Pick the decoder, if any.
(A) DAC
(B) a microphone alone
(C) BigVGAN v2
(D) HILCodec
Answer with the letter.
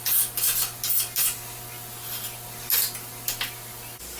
B